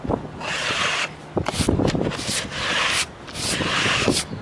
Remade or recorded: recorded